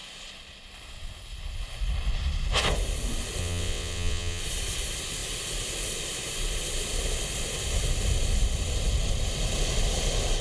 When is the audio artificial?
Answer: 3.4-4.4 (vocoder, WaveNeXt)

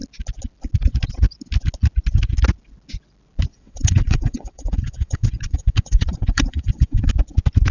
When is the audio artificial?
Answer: 3.5-7.1 (vocoder, WaveNeXt)

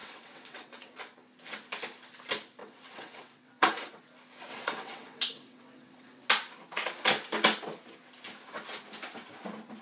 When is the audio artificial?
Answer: 0.0-1.0 (vocoder, WaveNeXt); 2.6-4.0; 4.5-6.3

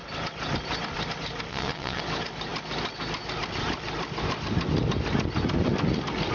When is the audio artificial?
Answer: 1.5-2.0 (vocoder, WaveNeXt)

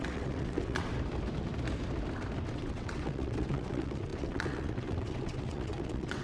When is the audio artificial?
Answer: 0.0-0.9 (vocoder, WaveNeXt); 2.5-6.2

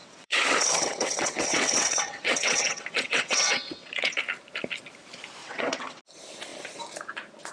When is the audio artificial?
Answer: 0.0-4.2 (vocoder, WaveNeXt); 5.4-6.0

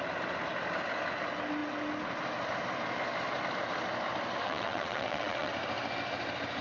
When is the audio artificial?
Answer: 4.4-5.5 (vocoder, WaveNeXt)